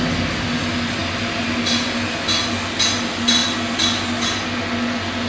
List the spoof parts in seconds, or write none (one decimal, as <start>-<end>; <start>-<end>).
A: none

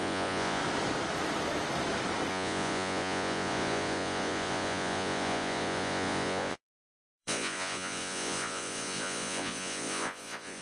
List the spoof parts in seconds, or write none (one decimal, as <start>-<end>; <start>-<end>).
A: 0.0-0.6; 2.3-10.6

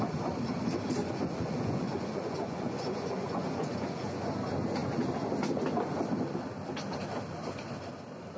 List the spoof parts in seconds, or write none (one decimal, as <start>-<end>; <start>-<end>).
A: 1.0-4.3

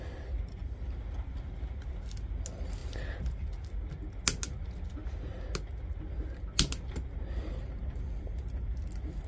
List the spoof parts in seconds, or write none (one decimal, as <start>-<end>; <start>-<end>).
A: none

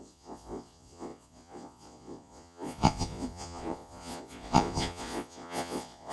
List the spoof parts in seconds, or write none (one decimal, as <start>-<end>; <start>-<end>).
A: 0.0-6.1

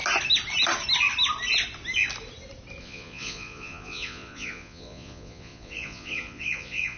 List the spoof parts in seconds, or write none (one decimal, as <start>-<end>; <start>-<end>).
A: 2.8-7.0